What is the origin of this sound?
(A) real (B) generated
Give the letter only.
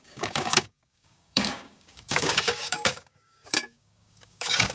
B